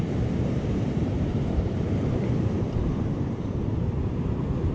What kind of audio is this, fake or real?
fake